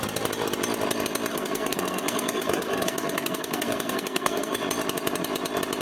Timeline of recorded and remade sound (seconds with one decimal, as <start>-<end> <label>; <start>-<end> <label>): 0.0-1.3 recorded; 1.3-4.6 remade; 4.6-5.8 recorded

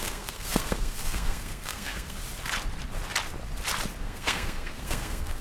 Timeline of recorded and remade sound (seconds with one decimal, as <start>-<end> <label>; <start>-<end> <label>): 0.0-2.2 remade; 2.2-4.0 recorded; 4.0-5.4 remade

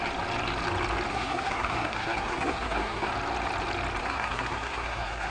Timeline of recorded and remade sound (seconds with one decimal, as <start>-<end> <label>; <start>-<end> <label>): 0.0-1.1 recorded; 1.1-3.1 remade; 3.1-4.0 recorded; 4.0-5.3 remade